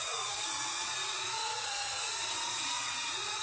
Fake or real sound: fake